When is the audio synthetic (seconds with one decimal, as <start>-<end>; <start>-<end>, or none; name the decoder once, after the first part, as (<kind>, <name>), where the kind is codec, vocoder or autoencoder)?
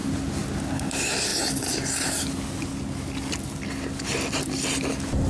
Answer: none